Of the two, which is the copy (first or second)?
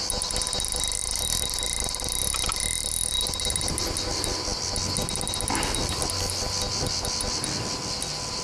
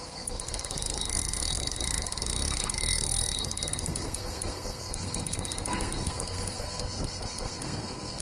second